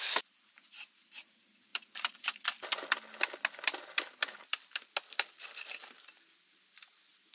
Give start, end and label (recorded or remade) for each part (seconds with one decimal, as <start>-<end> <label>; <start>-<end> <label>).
0.0-1.7 recorded; 1.7-2.4 remade; 2.4-7.3 recorded